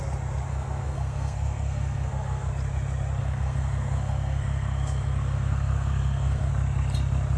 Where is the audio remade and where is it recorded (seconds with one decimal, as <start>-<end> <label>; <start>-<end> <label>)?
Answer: 0.0-0.5 recorded; 0.5-2.5 remade; 2.5-3.2 recorded; 3.2-6.5 remade; 6.5-7.4 recorded